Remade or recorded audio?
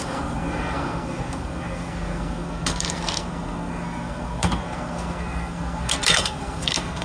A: remade